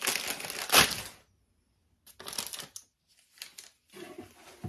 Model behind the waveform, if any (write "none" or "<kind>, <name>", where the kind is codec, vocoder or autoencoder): none